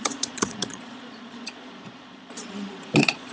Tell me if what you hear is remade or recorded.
remade